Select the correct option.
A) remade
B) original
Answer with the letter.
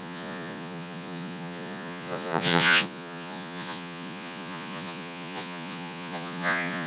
A